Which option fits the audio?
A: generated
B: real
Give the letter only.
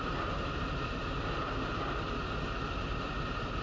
B